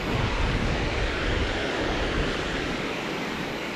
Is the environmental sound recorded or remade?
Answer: remade